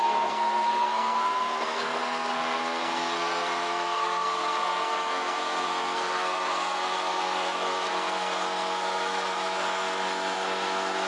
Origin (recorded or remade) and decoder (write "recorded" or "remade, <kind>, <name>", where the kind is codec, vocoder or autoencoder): remade, codec, SNAC